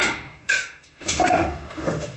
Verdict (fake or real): fake